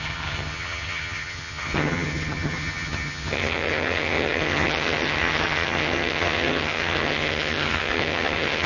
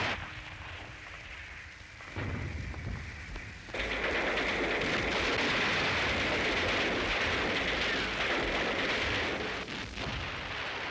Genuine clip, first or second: second